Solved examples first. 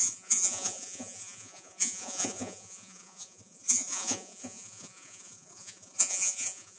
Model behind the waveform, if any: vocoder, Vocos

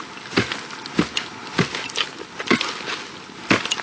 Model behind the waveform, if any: none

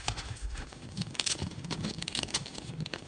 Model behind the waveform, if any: autoencoder, DAC-VAE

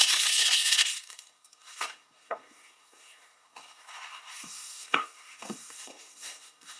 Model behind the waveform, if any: codec, SNAC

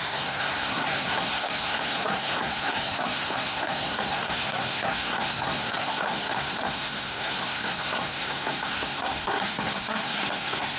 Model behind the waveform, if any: codec, SNAC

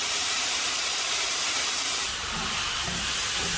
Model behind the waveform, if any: vocoder, BigVGAN v2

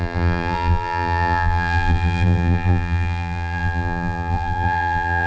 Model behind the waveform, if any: vocoder, BigVGAN v2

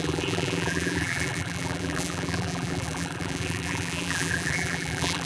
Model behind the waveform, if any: vocoder, BigVGAN v2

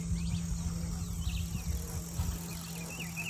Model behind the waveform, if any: none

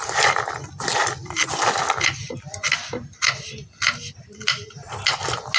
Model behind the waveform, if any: none